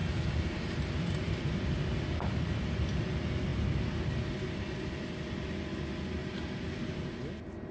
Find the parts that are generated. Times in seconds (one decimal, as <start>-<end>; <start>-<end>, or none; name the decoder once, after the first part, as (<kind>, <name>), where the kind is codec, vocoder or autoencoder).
none